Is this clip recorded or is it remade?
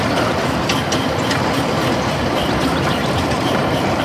remade